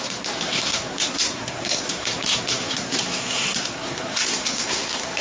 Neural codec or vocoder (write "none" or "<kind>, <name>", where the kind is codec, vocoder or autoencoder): codec, SNAC